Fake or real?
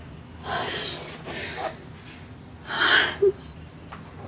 real